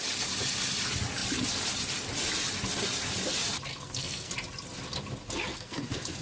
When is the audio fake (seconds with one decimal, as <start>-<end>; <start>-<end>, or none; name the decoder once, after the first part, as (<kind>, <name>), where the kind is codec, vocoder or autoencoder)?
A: 3.7-4.3 (codec, SNAC); 5.5-6.2